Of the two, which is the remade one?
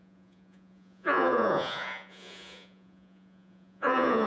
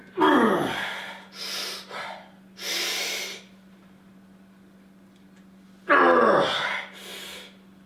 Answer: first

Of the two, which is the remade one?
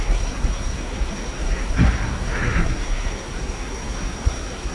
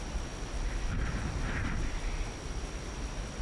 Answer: first